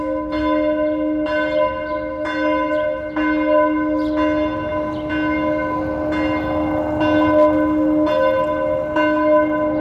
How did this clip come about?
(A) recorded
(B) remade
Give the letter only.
A